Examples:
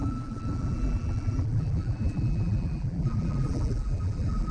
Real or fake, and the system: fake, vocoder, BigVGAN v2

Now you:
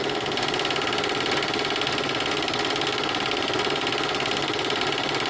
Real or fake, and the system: real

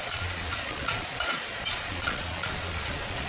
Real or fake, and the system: fake, vocoder, Vocos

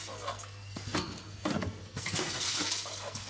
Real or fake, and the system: fake, codec, SNAC